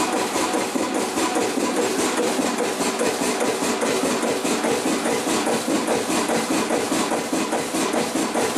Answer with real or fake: real